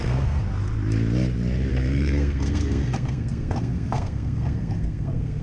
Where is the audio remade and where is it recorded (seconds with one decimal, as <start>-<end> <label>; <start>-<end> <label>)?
0.0-0.4 remade; 0.4-1.7 recorded; 1.7-5.4 remade